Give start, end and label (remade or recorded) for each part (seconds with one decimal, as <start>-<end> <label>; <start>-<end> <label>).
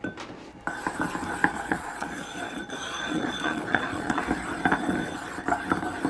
0.0-1.5 recorded; 1.5-4.2 remade; 4.2-6.1 recorded